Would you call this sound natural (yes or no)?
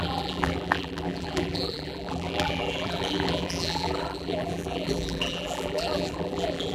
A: no